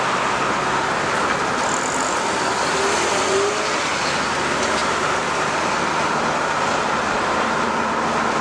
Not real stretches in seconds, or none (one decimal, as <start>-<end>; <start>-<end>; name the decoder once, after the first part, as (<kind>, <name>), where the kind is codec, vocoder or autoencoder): none